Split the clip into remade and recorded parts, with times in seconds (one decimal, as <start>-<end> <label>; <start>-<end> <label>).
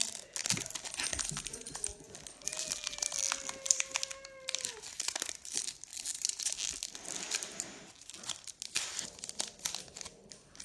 0.0-10.6 recorded